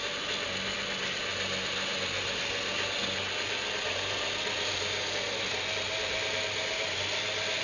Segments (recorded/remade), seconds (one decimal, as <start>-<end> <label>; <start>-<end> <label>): 0.0-7.6 recorded